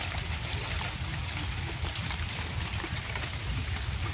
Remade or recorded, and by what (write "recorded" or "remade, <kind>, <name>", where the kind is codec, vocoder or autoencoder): recorded